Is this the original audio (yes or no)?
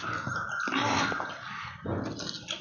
yes